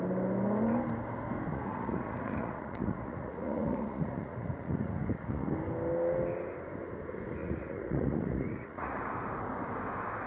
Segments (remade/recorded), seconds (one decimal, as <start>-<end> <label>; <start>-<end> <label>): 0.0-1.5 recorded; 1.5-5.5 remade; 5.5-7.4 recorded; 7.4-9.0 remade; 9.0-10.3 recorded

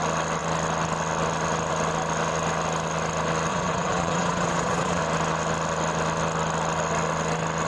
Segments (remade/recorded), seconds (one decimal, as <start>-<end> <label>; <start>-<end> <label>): 0.0-3.5 recorded; 3.5-5.0 remade; 5.0-7.7 recorded

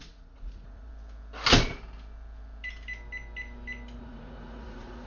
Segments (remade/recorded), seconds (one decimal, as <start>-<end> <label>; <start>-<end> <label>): 0.0-0.9 remade; 0.9-4.0 recorded; 4.0-5.1 remade

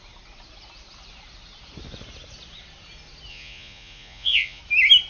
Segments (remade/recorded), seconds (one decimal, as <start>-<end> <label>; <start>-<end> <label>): 0.0-3.3 recorded; 3.3-4.6 remade; 4.6-5.1 recorded